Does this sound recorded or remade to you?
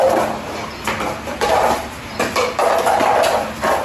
remade